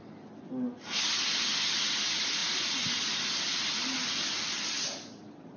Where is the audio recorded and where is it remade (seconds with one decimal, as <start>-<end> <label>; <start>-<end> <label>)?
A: 0.0-5.6 recorded